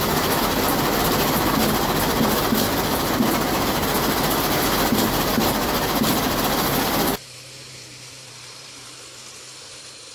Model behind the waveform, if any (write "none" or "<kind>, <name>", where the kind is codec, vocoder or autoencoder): vocoder, BigVGAN v2